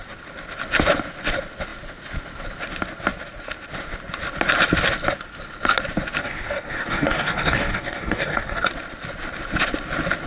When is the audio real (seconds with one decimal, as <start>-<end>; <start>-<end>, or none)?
0.0-6.2; 8.7-10.3